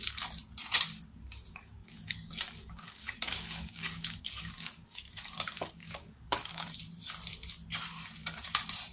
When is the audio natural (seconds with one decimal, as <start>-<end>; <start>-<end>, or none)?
0.0-1.5; 6.8-8.9